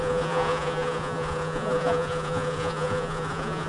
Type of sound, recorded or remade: remade